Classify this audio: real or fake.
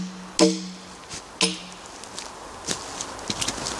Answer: real